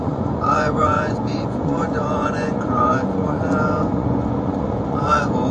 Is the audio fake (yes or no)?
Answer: yes